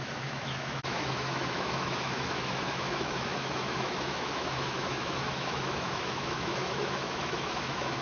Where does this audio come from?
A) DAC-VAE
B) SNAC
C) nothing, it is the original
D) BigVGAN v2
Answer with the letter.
A